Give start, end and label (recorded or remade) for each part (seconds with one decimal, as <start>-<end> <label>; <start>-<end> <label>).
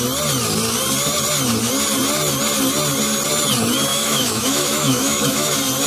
0.0-3.9 recorded; 3.9-5.5 remade; 5.5-5.9 recorded